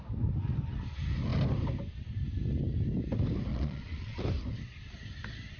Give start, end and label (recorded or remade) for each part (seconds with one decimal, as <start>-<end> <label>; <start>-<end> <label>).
0.0-3.5 recorded; 3.5-4.2 remade; 4.2-5.6 recorded